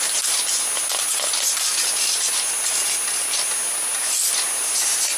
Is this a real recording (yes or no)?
yes